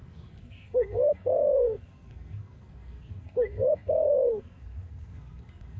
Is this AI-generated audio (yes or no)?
yes